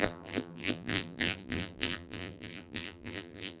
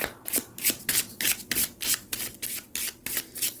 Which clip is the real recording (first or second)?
second